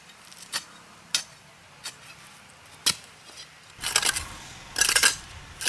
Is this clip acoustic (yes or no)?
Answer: yes